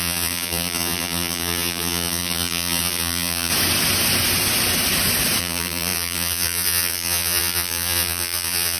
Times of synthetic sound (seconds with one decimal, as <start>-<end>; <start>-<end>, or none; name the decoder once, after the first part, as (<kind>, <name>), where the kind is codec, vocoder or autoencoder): 0.0-3.5 (vocoder, BigVGAN v2); 5.4-8.8